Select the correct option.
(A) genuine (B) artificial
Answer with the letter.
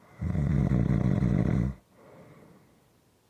A